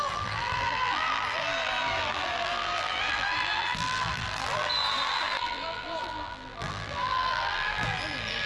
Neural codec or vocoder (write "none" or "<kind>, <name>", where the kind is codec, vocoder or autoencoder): vocoder, BigVGAN v2